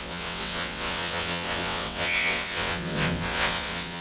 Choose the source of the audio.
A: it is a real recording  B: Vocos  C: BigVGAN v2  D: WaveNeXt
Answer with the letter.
D